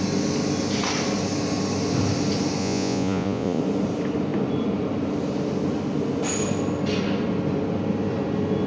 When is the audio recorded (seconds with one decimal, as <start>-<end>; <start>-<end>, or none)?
0.0-2.6; 3.6-8.7